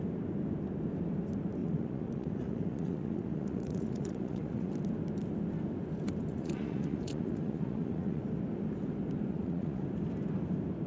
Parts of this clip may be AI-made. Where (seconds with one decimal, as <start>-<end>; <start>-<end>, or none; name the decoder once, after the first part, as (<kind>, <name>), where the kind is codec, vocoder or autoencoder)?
1.6-4.7 (vocoder, Vocos); 6.3-8.2; 9.3-9.8